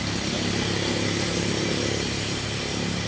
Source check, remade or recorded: recorded